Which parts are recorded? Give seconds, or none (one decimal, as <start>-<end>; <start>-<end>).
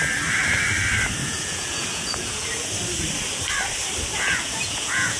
0.0-1.2; 2.7-4.1